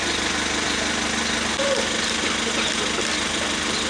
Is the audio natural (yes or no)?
yes